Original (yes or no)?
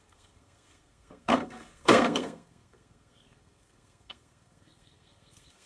no